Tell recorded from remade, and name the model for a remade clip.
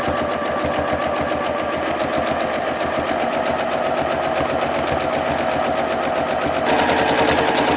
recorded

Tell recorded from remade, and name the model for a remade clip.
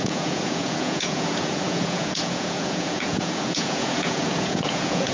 remade, vocoder, Vocos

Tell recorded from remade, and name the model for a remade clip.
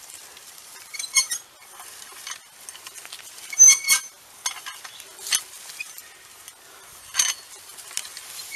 recorded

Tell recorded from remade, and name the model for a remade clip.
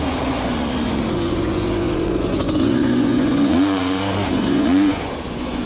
remade, vocoder, Vocos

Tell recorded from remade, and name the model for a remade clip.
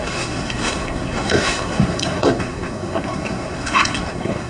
remade, codec, SNAC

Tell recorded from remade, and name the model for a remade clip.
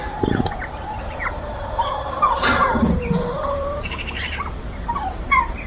remade, vocoder, BigVGAN v2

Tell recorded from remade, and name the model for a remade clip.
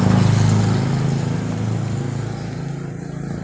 recorded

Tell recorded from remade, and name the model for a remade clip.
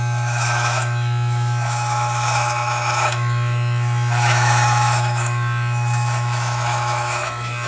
remade, autoencoder, DAC-VAE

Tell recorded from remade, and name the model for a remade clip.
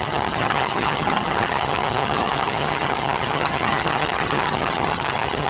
remade, vocoder, HiFi-GAN